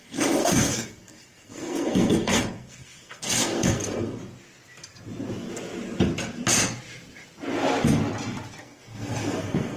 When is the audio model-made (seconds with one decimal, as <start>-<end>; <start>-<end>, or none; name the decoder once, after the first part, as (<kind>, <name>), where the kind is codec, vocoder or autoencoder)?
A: 0.0-4.2 (codec, SNAC); 8.6-9.8